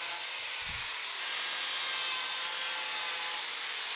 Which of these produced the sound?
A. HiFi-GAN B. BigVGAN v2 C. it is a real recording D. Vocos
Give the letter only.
C